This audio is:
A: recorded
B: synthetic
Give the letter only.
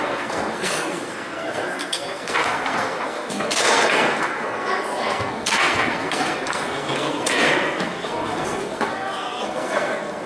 B